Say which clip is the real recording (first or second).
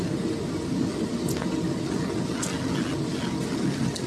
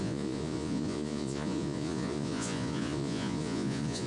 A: first